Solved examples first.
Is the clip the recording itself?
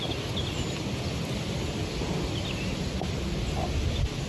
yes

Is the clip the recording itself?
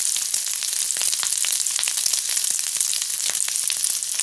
yes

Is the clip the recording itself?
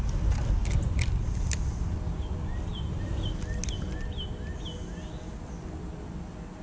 yes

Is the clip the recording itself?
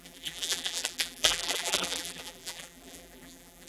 no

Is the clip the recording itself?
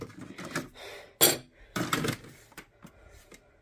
yes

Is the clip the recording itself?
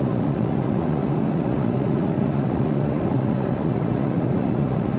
no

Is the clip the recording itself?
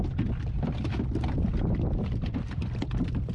yes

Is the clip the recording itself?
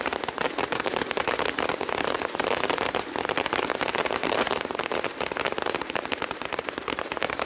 no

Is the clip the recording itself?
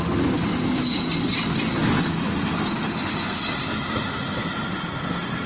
yes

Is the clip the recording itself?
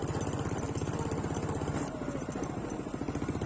yes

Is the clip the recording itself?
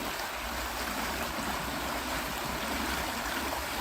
yes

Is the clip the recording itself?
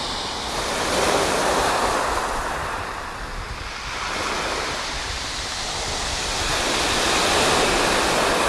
yes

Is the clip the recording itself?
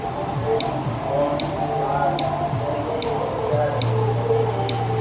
yes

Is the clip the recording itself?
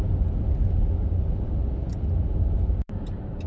yes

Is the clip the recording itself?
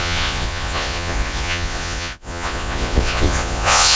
no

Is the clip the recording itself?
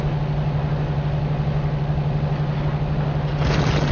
yes